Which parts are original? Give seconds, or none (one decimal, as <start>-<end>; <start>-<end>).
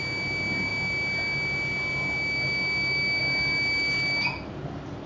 0.0-5.1